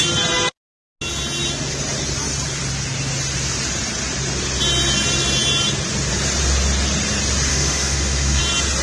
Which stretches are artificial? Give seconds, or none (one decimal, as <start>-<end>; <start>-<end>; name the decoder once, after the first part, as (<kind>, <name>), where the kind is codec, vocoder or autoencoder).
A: 7.5-8.4 (autoencoder, DAC-VAE)